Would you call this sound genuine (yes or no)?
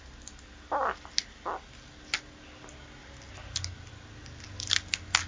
yes